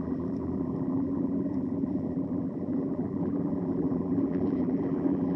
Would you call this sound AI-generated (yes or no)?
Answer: yes